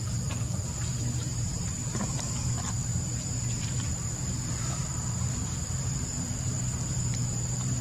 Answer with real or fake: fake